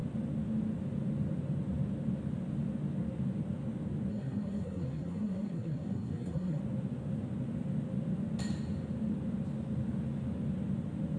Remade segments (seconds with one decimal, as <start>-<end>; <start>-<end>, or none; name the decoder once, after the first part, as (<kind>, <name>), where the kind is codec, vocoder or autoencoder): 4.1-6.6 (codec, SNAC)